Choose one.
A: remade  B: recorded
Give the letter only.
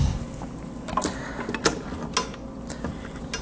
B